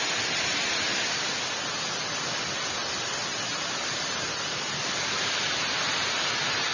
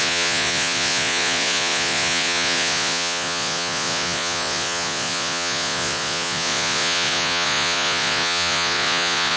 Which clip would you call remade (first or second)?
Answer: second